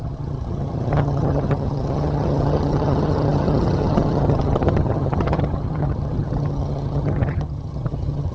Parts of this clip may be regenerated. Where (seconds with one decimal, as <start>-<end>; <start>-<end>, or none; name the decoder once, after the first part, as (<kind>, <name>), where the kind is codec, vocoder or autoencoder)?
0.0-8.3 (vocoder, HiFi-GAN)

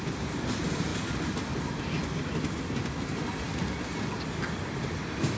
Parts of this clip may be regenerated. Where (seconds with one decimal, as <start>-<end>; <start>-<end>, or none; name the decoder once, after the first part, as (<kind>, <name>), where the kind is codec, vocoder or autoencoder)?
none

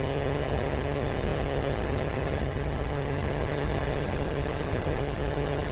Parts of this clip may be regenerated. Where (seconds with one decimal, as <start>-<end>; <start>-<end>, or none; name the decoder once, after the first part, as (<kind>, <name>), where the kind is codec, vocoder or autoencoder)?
0.0-5.7 (vocoder, HiFi-GAN)